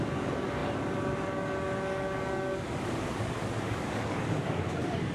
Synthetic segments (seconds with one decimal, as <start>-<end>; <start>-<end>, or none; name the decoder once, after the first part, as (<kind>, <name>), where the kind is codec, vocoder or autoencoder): 0.0-5.1 (codec, DAC)